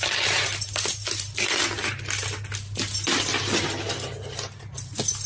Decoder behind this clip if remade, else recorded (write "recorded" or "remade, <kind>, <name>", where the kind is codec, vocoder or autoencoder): recorded